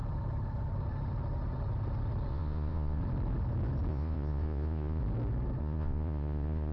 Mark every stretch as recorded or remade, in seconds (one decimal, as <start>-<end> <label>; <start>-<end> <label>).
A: 0.0-2.3 recorded; 2.3-3.0 remade; 3.0-3.9 recorded; 3.9-5.0 remade; 5.0-5.6 recorded; 5.6-6.7 remade